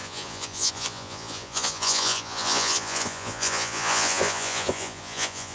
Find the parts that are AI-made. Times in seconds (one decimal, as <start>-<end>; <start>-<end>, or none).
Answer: 0.0-5.5